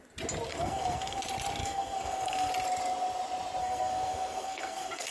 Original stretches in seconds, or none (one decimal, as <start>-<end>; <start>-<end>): 0.0-0.5; 1.2-1.6; 2.5-3.6